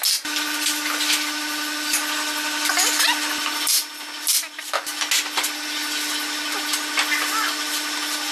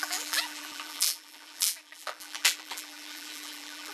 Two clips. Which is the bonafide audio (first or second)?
first